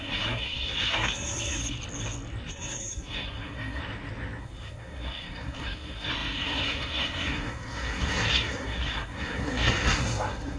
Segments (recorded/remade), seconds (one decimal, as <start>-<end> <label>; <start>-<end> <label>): 0.0-1.6 remade; 1.6-2.5 recorded; 2.5-3.8 remade; 3.8-4.4 recorded; 4.4-10.6 remade